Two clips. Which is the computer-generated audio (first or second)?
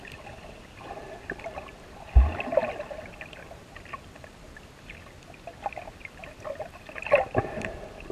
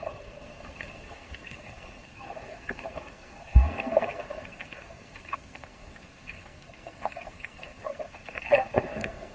second